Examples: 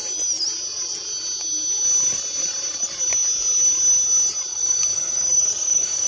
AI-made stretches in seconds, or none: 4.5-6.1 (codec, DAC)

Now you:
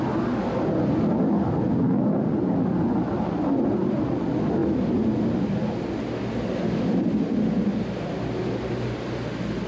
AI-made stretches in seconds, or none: none